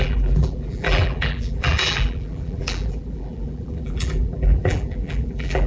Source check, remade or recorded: remade